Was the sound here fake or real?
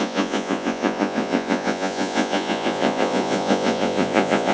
fake